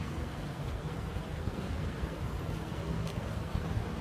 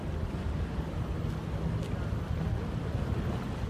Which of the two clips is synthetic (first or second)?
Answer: first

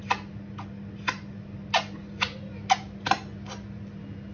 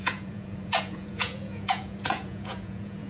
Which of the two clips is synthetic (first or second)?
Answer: second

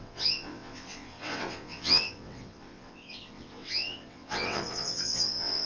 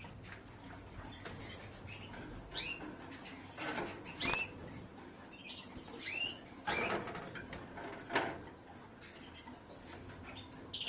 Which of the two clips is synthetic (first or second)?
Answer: first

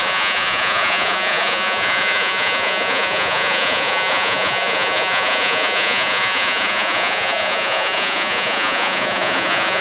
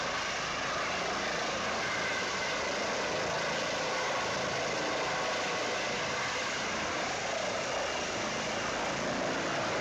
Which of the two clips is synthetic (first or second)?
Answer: first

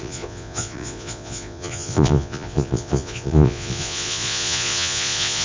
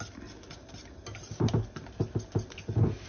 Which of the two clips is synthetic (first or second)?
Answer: first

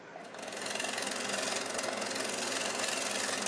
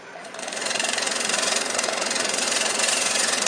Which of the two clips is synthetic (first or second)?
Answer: second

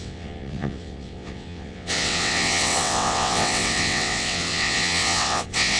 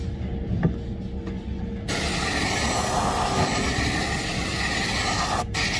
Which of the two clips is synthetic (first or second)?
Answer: first